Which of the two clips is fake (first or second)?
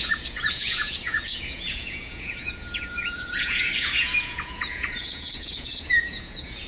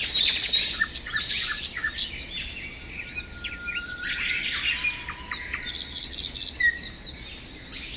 first